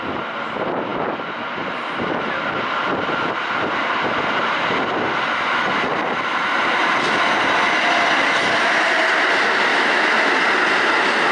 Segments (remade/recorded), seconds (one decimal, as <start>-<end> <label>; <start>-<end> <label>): 0.0-9.7 recorded; 9.7-10.3 remade; 10.3-11.3 recorded

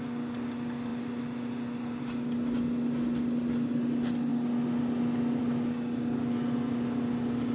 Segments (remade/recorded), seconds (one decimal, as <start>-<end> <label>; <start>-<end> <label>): 0.0-7.5 recorded

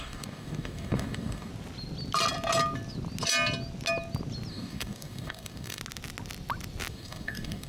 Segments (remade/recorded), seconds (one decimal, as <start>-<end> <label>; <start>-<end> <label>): 0.0-1.5 remade; 1.5-4.5 recorded; 4.5-5.8 remade; 5.8-6.9 recorded; 6.9-7.7 remade

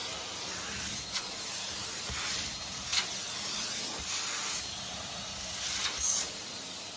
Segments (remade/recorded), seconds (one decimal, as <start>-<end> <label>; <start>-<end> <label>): 0.0-7.0 recorded

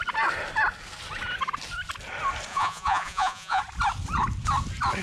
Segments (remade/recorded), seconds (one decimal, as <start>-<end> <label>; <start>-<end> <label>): 0.0-2.5 recorded; 2.5-3.6 remade; 3.6-5.0 recorded

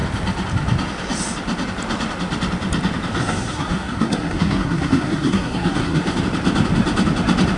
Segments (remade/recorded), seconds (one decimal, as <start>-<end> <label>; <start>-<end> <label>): 0.0-3.2 recorded; 3.2-6.2 remade; 6.2-7.6 recorded

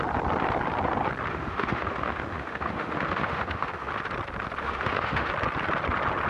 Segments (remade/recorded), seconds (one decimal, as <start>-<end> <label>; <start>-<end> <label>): 0.0-1.3 recorded; 1.3-3.9 remade; 3.9-4.6 recorded; 4.6-5.3 remade; 5.3-6.3 recorded